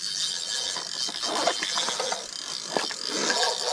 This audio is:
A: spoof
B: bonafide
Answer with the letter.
B